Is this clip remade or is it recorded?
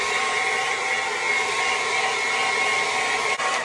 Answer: recorded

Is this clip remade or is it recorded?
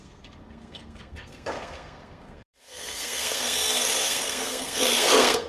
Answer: remade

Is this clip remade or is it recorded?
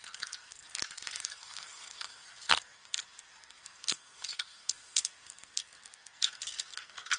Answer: remade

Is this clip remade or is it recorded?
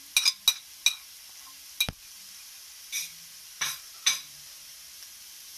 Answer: recorded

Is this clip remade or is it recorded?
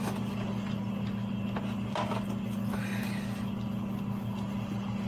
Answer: recorded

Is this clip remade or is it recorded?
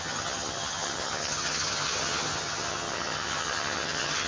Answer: remade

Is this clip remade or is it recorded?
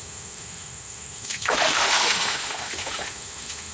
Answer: remade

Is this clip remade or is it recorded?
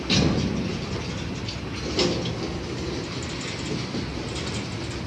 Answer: recorded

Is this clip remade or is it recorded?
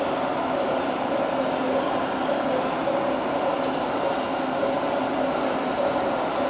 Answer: recorded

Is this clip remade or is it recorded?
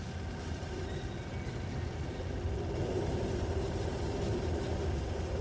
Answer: recorded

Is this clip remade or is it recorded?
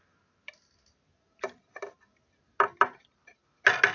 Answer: recorded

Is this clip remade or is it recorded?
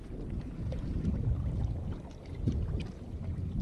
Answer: recorded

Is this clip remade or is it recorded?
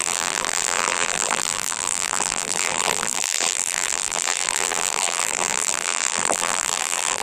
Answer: remade